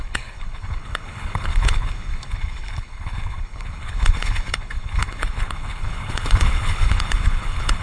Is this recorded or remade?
remade